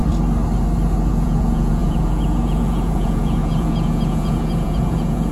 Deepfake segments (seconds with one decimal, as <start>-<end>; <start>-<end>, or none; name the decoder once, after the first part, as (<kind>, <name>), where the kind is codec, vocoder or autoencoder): 1.1-5.3 (vocoder, Vocos)